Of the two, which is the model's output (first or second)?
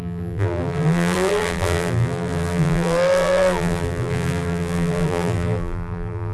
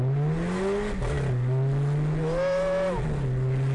first